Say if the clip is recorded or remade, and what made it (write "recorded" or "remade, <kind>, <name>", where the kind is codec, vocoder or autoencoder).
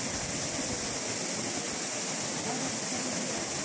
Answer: recorded